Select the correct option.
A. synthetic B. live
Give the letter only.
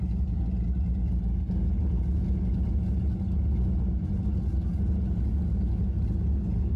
B